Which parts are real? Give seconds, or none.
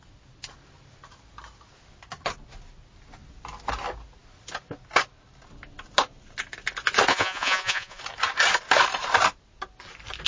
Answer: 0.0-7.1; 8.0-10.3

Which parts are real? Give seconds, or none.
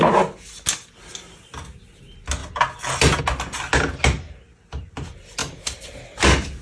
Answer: 0.0-6.6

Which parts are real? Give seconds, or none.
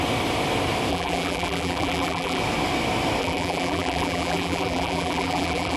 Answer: 0.0-0.9; 2.4-3.2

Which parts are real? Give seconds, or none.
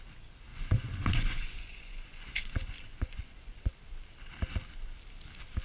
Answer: 0.0-0.5; 3.7-5.6